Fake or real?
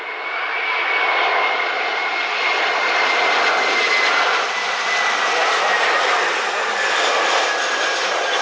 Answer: real